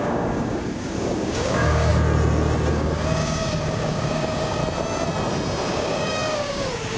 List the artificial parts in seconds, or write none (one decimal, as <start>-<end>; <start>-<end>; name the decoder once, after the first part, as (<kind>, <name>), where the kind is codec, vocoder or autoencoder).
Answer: 0.0-1.9 (codec, DAC); 2.7-4.6; 5.7-7.0